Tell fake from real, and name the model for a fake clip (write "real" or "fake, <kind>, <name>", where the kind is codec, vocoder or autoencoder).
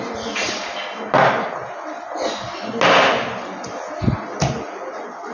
real